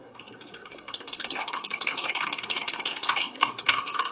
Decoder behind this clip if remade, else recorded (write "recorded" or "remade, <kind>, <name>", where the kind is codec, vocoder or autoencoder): remade, codec, SNAC